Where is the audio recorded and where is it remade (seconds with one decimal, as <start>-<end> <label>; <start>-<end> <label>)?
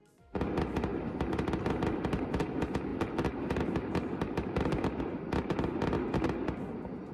0.0-0.9 recorded; 0.9-2.0 remade; 2.0-2.9 recorded; 2.9-5.0 remade; 5.0-7.1 recorded